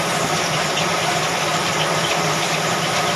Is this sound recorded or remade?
recorded